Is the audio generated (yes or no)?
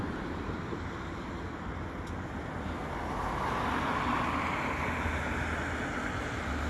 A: no